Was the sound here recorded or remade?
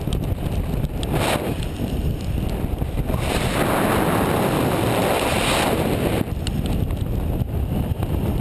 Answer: recorded